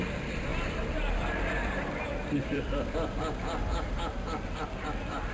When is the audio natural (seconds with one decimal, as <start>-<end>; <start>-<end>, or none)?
none